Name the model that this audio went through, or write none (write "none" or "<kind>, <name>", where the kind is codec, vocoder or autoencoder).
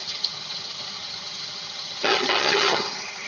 vocoder, HiFi-GAN